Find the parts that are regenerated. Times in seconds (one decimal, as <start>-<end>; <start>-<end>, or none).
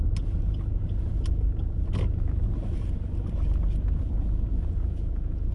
4.5-5.5